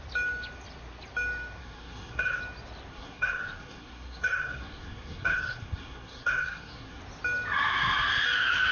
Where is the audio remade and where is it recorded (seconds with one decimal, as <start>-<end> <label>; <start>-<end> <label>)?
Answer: 0.0-1.6 recorded; 1.6-2.4 remade; 2.4-2.9 recorded; 2.9-7.0 remade; 7.0-8.7 recorded